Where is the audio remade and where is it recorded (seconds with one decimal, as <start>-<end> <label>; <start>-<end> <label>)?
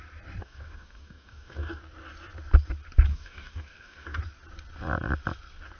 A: 0.0-0.4 recorded; 0.4-1.8 remade; 1.8-3.1 recorded; 3.1-4.2 remade; 4.2-5.8 recorded